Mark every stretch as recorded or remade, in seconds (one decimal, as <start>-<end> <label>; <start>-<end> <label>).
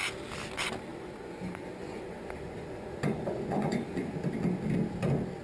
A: 0.0-0.9 recorded; 0.9-4.1 remade; 4.1-5.4 recorded